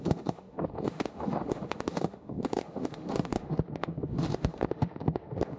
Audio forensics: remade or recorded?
remade